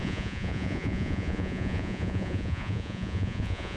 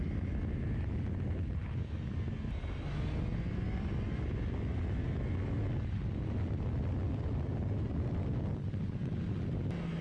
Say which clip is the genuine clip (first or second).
second